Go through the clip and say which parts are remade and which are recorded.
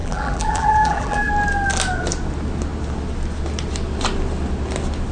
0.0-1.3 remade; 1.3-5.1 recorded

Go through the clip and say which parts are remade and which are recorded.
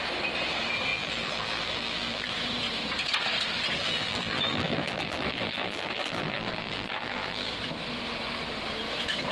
0.0-0.9 recorded; 0.9-2.3 remade; 2.3-3.8 recorded; 3.8-7.5 remade; 7.5-9.3 recorded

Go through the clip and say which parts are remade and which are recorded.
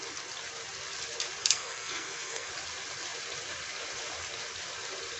0.0-1.4 recorded; 1.4-2.5 remade; 2.5-5.2 recorded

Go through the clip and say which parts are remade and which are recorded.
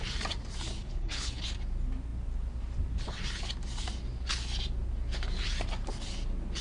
0.0-0.8 recorded; 0.8-1.4 remade; 1.4-6.6 recorded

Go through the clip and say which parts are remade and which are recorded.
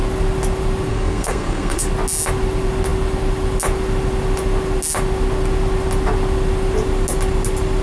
0.0-0.9 recorded; 0.9-1.9 remade; 1.9-7.8 recorded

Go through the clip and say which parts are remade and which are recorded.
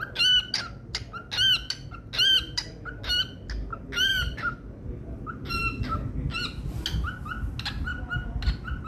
0.0-8.9 recorded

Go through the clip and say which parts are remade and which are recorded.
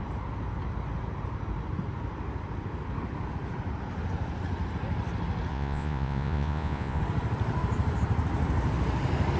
0.0-5.5 recorded; 5.5-7.0 remade; 7.0-9.4 recorded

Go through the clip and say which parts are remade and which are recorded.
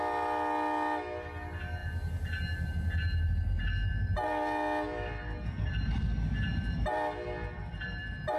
0.0-8.4 recorded